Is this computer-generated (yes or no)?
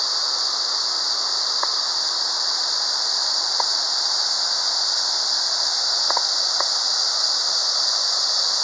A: no